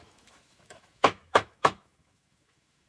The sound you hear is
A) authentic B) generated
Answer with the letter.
B